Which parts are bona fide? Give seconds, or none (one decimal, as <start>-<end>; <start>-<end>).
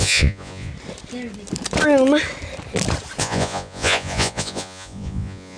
0.7-3.2